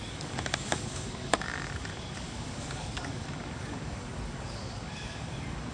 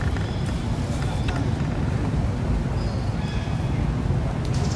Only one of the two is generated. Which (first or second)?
first